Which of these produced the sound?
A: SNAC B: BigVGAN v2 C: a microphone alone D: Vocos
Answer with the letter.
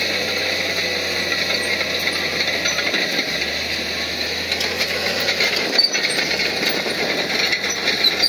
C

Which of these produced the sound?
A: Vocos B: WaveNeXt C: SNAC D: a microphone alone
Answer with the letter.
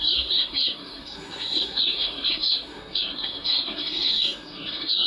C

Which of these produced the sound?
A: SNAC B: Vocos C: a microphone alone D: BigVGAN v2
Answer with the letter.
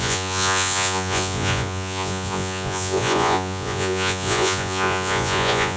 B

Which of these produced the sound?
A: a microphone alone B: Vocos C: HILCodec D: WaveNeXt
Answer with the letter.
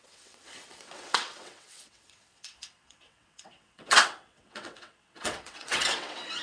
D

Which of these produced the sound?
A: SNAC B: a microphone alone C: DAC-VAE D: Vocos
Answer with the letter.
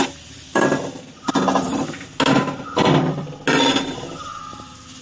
B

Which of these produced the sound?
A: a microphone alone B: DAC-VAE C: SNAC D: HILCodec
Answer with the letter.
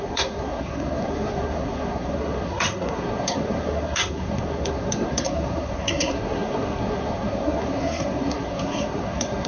C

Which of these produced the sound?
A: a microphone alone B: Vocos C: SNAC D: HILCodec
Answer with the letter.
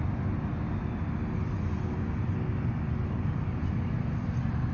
A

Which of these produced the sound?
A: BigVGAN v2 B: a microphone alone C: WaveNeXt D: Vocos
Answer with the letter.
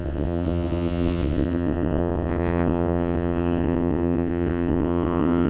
C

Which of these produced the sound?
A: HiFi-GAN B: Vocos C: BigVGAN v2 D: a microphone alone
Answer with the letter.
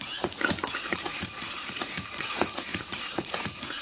B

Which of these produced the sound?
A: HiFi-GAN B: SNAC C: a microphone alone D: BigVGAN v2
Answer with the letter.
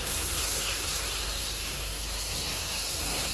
B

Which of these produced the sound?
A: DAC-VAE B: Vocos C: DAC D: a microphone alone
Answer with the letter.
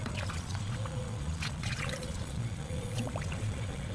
B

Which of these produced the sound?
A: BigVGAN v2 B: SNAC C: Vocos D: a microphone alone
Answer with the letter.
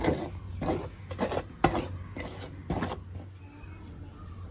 D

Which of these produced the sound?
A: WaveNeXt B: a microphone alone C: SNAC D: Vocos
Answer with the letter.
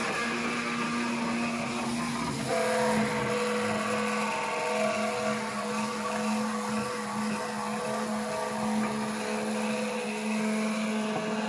B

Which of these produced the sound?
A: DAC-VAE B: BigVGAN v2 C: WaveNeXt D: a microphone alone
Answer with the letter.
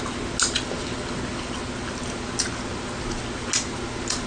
D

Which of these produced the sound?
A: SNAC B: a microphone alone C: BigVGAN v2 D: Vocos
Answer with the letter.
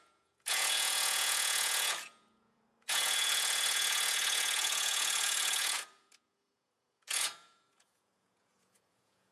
D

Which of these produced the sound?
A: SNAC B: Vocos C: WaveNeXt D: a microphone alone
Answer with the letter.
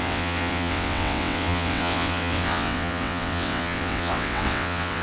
C